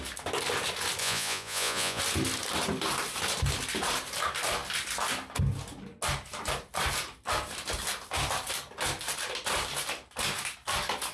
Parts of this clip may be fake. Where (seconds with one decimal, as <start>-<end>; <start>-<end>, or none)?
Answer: 1.0-2.0